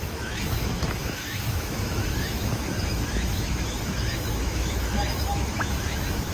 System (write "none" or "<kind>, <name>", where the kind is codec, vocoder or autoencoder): autoencoder, DAC-VAE